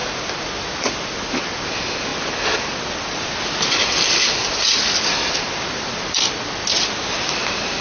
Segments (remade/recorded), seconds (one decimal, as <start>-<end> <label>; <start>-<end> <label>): 0.0-7.8 recorded